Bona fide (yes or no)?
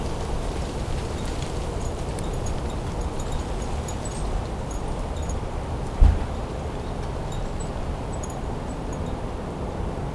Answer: no